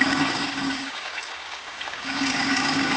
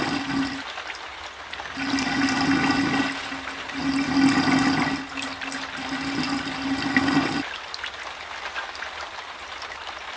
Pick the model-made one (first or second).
first